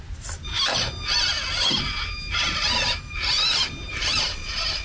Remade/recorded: recorded